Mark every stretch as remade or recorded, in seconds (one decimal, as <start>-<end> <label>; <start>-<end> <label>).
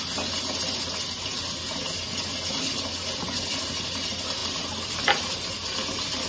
0.0-6.3 recorded